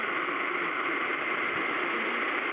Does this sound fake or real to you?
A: real